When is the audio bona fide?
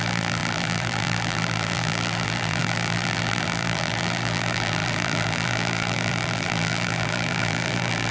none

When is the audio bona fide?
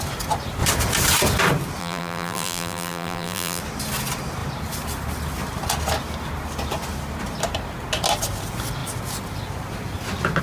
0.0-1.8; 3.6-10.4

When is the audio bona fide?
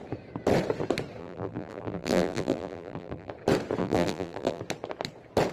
0.0-1.2; 3.3-3.8; 4.6-5.5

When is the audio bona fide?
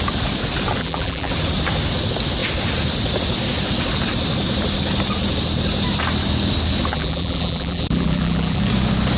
0.0-0.8; 1.3-6.9; 8.6-9.2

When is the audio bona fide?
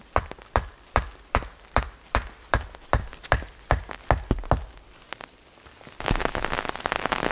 3.8-7.3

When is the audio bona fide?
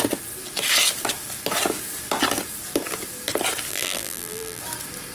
0.0-3.7; 4.6-5.1